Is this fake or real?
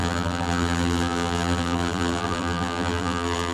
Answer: fake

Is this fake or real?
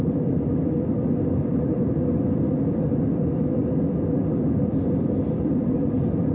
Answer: fake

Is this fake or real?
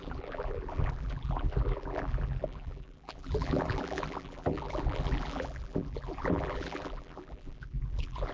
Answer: fake